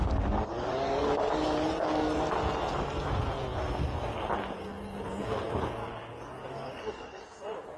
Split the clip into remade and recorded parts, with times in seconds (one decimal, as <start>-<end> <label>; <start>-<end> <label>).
0.0-1.7 remade; 1.7-5.8 recorded; 5.8-7.2 remade; 7.2-7.8 recorded